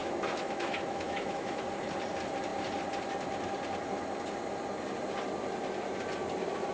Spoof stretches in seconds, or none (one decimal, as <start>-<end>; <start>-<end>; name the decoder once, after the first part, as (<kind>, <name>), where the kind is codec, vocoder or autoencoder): 0.0-1.6 (autoencoder, DAC-VAE)